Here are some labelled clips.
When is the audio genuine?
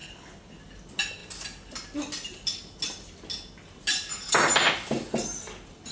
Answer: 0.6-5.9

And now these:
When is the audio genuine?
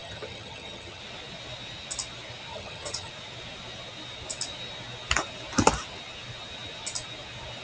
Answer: 1.0-2.5; 3.1-7.6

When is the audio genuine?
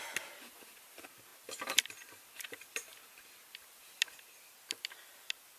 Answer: 0.0-5.6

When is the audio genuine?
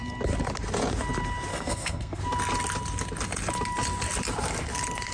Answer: 0.0-1.5; 2.2-5.1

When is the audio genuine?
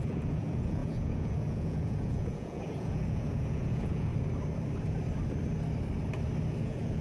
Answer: 4.1-6.6